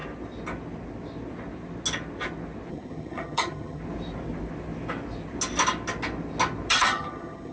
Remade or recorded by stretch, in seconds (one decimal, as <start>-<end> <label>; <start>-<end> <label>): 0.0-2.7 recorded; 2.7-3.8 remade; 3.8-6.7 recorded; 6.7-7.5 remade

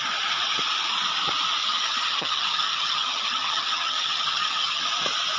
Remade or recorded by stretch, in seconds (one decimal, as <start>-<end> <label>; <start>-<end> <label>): 0.0-1.6 recorded; 1.6-4.8 remade; 4.8-5.4 recorded

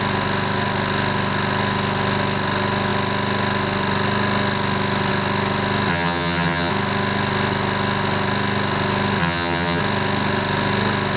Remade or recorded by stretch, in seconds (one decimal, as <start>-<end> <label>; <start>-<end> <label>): 0.0-5.9 recorded; 5.9-6.7 remade; 6.7-9.2 recorded; 9.2-9.8 remade; 9.8-11.2 recorded

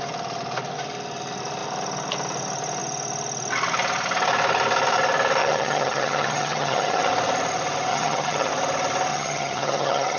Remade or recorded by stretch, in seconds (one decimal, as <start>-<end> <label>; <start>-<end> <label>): 0.0-5.4 recorded; 5.4-7.1 remade; 7.1-7.9 recorded; 7.9-8.5 remade; 8.5-9.1 recorded; 9.1-10.2 remade